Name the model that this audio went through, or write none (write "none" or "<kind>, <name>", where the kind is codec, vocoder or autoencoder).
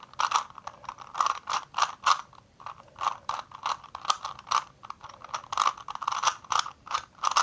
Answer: vocoder, BigVGAN v2